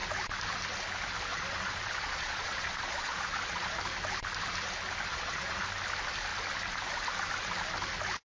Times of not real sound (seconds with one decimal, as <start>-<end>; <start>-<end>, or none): 1.3-3.8; 5.1-5.6